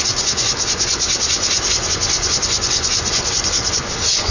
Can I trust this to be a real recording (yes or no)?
no